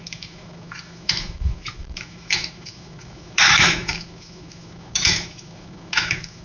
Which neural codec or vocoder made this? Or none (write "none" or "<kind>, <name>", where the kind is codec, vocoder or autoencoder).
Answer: autoencoder, DAC-VAE